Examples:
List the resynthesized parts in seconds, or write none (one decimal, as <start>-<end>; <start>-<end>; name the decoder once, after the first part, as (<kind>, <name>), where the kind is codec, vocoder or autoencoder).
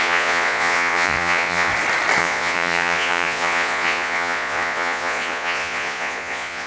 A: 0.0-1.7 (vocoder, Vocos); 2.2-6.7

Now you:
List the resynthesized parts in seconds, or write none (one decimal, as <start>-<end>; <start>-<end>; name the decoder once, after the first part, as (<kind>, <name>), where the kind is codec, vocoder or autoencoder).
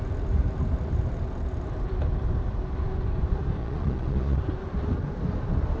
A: 3.6-4.4 (vocoder, Vocos)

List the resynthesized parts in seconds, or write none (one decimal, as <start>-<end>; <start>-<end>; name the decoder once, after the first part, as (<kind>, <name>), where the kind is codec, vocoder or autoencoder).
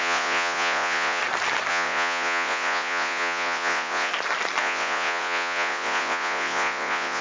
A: 0.0-1.2 (vocoder, Vocos); 1.7-4.1; 4.6-7.2